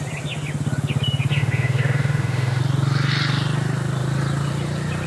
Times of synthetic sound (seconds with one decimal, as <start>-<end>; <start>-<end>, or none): 1.3-2.6